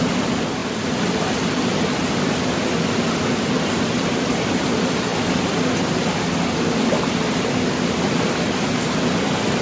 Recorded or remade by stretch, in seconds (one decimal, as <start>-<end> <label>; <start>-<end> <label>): 0.0-0.6 recorded; 0.6-3.6 remade; 3.6-9.6 recorded